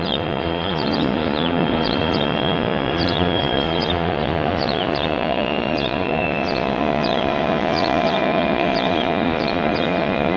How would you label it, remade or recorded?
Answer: remade